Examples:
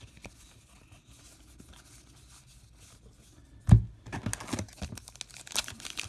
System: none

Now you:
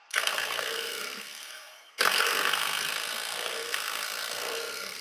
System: codec, SNAC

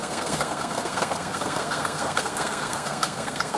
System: codec, SNAC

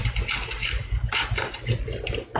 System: none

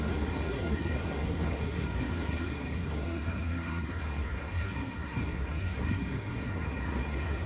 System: codec, SNAC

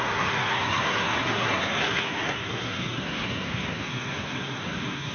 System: codec, SNAC